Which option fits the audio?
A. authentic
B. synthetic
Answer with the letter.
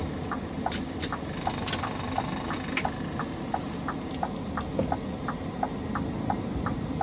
A